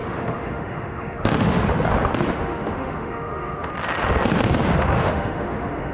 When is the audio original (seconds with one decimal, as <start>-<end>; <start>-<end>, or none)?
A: 1.6-2.3; 3.7-4.8